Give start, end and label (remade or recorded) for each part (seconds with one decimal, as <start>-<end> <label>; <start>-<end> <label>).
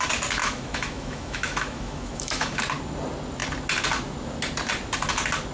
0.0-0.4 recorded; 0.4-2.6 remade; 2.6-5.5 recorded